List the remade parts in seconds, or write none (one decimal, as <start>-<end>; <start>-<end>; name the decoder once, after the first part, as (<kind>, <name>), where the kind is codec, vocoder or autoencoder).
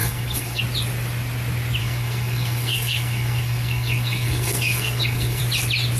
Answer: 0.0-0.6 (codec, SNAC); 1.8-5.4